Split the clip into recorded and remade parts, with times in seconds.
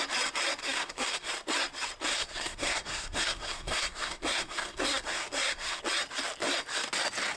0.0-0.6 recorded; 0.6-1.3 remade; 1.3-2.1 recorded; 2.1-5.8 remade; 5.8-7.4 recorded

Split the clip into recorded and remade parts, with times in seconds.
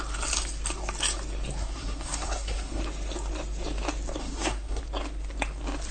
0.0-1.6 recorded; 1.6-2.8 remade; 2.8-4.2 recorded; 4.2-4.8 remade; 4.8-5.9 recorded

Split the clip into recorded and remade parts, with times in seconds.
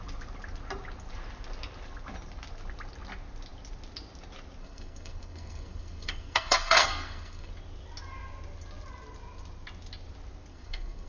0.0-4.6 recorded; 4.6-7.5 remade; 7.5-10.5 recorded; 10.5-11.1 remade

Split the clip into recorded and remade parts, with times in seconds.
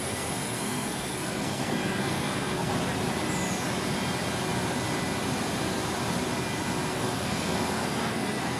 0.0-2.7 remade; 2.7-6.9 recorded; 6.9-8.6 remade